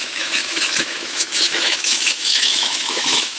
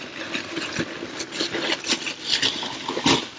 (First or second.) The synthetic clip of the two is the first